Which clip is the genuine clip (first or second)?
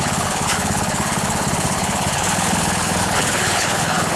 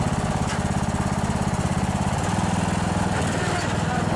second